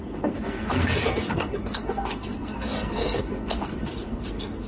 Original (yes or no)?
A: no